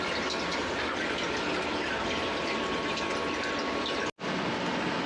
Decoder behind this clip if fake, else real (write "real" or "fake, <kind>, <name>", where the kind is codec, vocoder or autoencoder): real